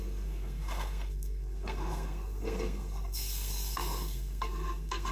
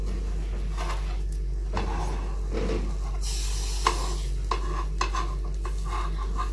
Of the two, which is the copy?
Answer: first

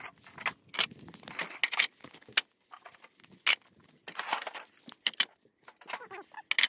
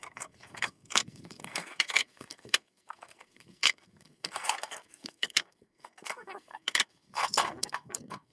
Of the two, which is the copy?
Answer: second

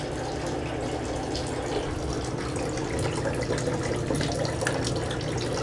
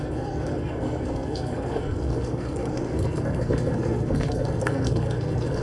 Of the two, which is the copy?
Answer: second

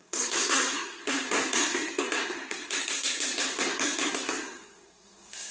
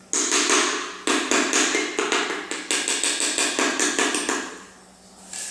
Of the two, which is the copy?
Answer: first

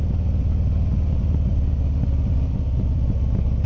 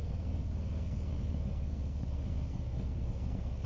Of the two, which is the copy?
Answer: second